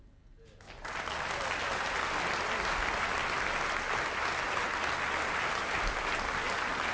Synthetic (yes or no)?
no